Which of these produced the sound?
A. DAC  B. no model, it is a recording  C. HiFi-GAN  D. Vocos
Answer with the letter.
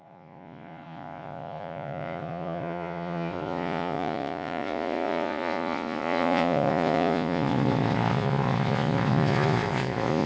D